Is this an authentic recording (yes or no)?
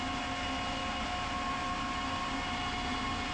yes